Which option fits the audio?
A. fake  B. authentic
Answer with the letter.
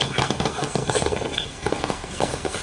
A